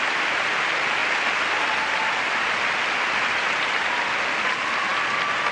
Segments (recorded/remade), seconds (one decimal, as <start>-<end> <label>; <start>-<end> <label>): 0.0-5.5 recorded